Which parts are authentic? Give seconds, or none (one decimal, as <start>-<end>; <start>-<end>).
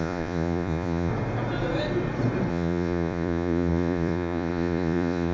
1.1-2.5